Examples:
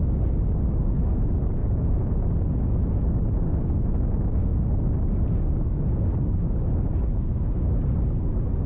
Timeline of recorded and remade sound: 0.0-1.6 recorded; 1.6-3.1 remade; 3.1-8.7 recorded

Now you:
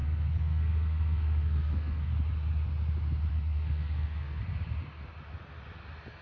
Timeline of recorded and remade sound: 0.0-2.1 remade; 2.1-3.3 recorded; 3.3-4.4 remade; 4.4-6.2 recorded

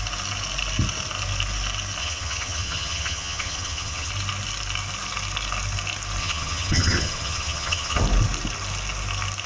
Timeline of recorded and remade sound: 0.0-2.0 recorded; 2.0-4.1 remade; 4.1-6.2 recorded; 6.2-8.0 remade; 8.0-9.5 recorded

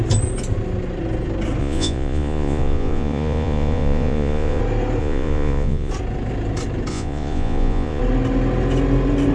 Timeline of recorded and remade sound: 0.0-1.6 recorded; 1.6-4.6 remade; 4.6-5.0 recorded; 5.0-5.9 remade; 5.9-6.9 recorded; 6.9-8.0 remade; 8.0-9.3 recorded